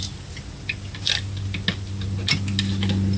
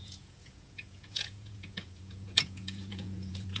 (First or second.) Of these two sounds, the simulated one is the second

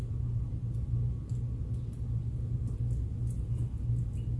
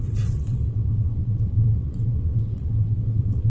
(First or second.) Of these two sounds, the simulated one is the second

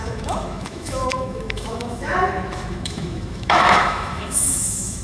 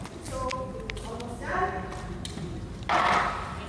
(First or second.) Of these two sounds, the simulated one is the first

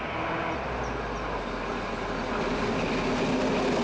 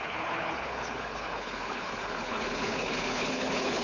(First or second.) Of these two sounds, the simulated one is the second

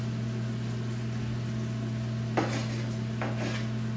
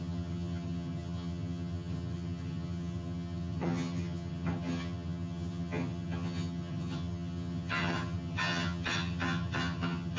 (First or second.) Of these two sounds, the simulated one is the second